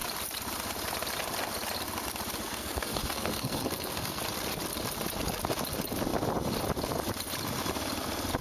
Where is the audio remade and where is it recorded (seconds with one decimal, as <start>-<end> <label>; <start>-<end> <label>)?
0.0-2.5 recorded; 2.5-4.2 remade; 4.2-8.4 recorded